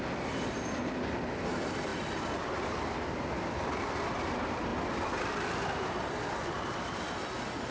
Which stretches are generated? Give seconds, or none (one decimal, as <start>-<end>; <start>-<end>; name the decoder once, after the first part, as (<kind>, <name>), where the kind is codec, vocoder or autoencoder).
0.0-7.7 (vocoder, BigVGAN v2)